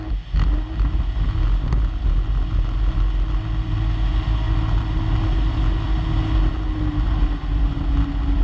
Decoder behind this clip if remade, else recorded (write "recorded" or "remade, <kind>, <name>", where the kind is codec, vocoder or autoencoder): recorded